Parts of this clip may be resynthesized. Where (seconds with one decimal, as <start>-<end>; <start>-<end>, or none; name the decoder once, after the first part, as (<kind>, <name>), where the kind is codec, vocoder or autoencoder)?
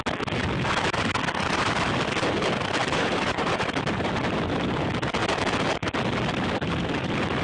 2.8-4.1 (vocoder, BigVGAN v2)